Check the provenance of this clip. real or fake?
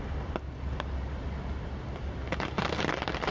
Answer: real